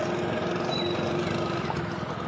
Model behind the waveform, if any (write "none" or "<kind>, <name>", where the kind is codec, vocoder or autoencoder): none